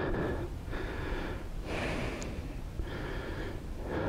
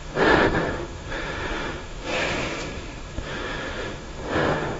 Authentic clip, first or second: first